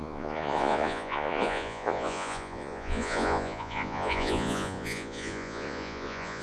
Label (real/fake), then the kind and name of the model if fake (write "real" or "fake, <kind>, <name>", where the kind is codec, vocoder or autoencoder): fake, vocoder, Vocos